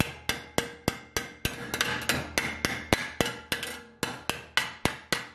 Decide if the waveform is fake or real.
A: real